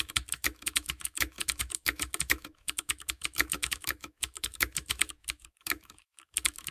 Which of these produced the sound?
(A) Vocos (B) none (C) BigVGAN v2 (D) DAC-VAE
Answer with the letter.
D